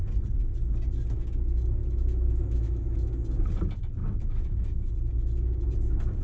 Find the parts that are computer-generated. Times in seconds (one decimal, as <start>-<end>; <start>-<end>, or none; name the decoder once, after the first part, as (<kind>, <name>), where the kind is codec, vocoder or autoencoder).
1.8-3.1 (autoencoder, DAC-VAE); 4.0-4.9